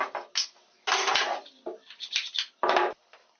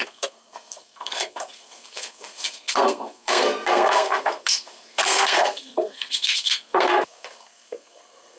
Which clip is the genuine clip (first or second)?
first